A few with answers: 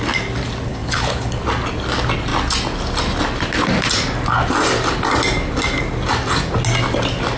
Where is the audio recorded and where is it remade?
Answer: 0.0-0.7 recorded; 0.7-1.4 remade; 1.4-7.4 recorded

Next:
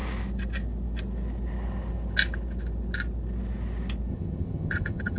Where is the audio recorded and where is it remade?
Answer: 0.0-4.1 recorded; 4.1-5.2 remade